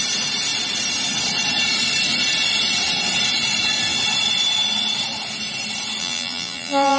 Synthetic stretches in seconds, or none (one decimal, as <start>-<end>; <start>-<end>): 6.0-7.0